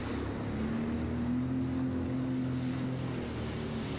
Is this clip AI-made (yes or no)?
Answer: no